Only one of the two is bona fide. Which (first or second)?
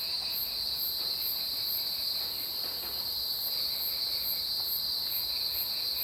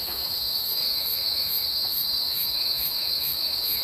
first